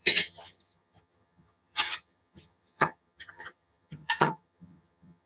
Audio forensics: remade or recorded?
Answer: remade